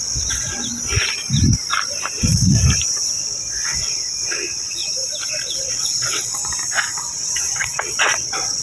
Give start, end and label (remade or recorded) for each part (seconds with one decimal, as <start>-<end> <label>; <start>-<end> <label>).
0.0-0.7 remade; 0.7-2.2 recorded; 2.2-2.6 remade; 2.6-3.2 recorded; 3.2-4.8 remade; 4.8-5.3 recorded; 5.3-6.4 remade; 6.4-7.0 recorded; 7.0-8.6 remade